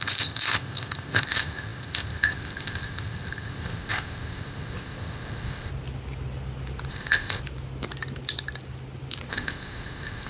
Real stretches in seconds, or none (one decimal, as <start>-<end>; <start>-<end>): 5.7-6.9; 7.4-9.3